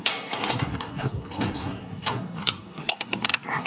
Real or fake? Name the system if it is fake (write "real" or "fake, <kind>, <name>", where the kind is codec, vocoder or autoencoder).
fake, codec, SNAC